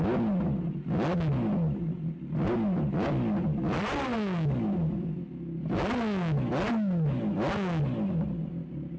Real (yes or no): yes